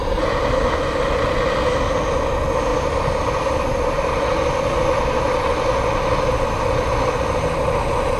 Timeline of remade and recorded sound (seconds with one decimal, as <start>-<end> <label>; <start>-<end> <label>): 0.0-8.2 recorded

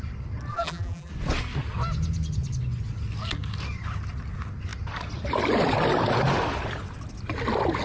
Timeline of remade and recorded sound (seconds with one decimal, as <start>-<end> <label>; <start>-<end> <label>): 0.0-0.5 recorded; 0.5-1.1 remade; 1.1-7.8 recorded

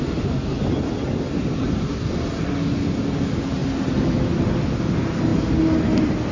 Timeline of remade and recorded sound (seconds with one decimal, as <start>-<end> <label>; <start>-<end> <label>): 0.0-6.3 recorded

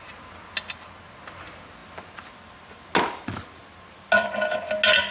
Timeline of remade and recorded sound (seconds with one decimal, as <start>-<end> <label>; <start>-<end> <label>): 0.0-5.1 recorded

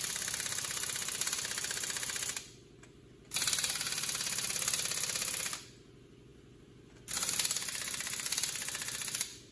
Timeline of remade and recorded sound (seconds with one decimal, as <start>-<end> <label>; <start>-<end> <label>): 0.0-9.5 recorded

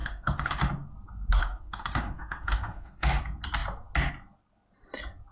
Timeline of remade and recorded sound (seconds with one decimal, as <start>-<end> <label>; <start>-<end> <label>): 0.0-0.7 remade; 0.7-1.4 recorded; 1.4-3.2 remade; 3.2-5.3 recorded

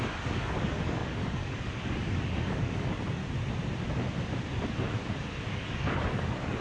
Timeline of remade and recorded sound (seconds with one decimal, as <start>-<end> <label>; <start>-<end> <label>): 0.0-3.2 remade; 3.2-5.6 recorded; 5.6-6.6 remade

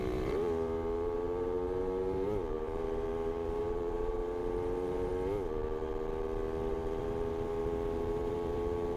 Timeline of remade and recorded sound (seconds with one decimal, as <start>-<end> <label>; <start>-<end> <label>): 0.0-5.1 remade; 5.1-6.7 recorded; 6.7-9.0 remade